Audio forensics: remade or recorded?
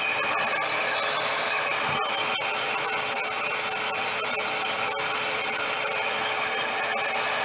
recorded